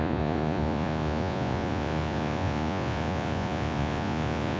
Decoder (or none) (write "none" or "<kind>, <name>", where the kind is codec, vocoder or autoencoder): vocoder, Vocos